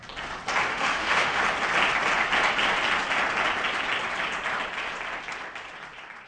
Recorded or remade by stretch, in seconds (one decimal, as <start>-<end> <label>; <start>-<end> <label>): 0.0-0.7 recorded; 0.7-1.4 remade; 1.4-6.3 recorded